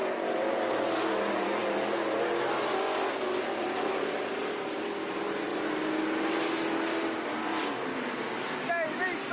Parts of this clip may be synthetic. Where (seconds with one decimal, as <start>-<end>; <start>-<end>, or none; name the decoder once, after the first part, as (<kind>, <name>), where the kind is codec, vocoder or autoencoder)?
none